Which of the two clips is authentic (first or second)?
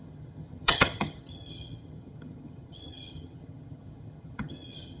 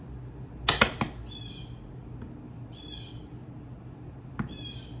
second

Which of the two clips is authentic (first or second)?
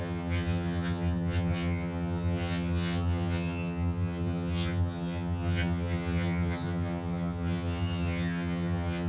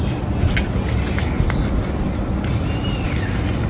second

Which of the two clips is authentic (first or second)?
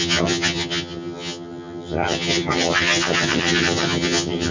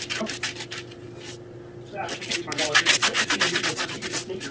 second